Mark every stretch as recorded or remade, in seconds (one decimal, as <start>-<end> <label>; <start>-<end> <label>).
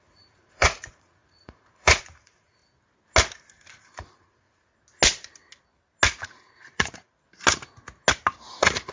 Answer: 0.0-2.6 remade; 2.6-3.7 recorded; 3.7-4.7 remade; 4.7-6.2 recorded; 6.2-7.1 remade; 7.1-8.5 recorded; 8.5-8.9 remade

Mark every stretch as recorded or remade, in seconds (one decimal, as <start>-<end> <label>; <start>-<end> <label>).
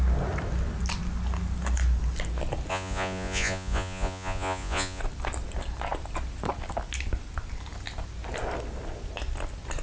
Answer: 0.0-2.7 recorded; 2.7-5.0 remade; 5.0-9.8 recorded